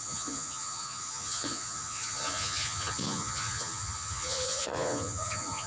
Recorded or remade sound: remade